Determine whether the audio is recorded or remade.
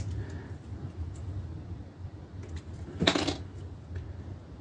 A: recorded